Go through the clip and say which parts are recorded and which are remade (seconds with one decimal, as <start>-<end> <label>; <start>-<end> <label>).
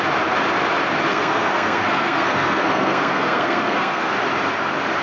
0.0-1.1 recorded; 1.1-4.1 remade; 4.1-5.0 recorded